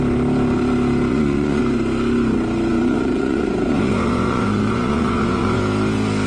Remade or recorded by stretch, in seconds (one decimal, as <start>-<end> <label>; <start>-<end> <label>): 0.0-1.1 recorded; 1.1-1.6 remade; 1.6-2.7 recorded; 2.7-5.6 remade; 5.6-6.3 recorded